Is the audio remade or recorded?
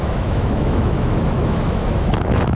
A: remade